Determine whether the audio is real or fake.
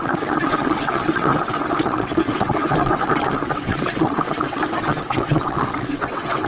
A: fake